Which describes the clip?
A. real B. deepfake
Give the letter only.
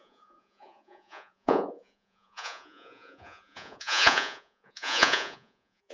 B